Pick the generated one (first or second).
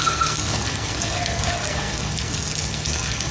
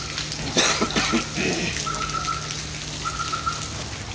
first